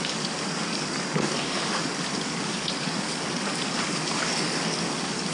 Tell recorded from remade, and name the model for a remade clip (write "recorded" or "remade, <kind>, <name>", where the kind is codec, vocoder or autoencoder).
remade, codec, DAC